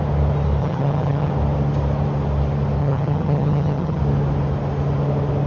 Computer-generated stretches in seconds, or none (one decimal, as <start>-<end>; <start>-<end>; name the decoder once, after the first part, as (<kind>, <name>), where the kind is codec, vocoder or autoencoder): 0.6-1.3 (vocoder, HiFi-GAN); 2.8-4.0